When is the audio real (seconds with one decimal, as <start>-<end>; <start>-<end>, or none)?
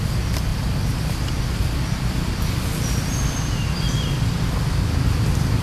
0.0-5.6